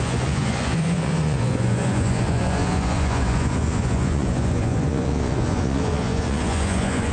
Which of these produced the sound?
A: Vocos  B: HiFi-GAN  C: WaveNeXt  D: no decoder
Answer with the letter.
A